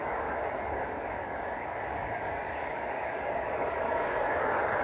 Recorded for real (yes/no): no